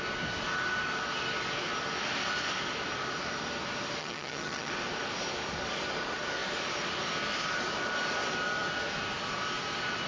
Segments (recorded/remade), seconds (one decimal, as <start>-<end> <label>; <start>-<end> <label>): 0.0-4.0 recorded; 4.0-4.7 remade; 4.7-10.1 recorded